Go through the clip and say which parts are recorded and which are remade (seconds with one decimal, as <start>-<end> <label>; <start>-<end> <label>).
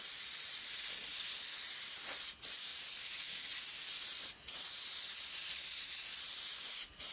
0.0-2.7 remade; 2.7-4.0 recorded; 4.0-7.1 remade